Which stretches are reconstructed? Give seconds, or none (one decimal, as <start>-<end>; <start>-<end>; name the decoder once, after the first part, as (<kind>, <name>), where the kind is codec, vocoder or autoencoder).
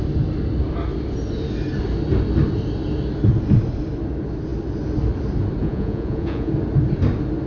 5.6-6.5 (vocoder, Vocos)